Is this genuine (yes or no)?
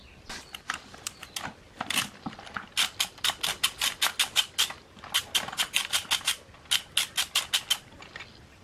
yes